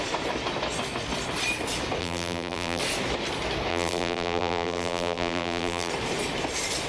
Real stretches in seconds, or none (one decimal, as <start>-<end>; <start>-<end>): 0.0-2.0; 2.8-3.7; 5.9-6.9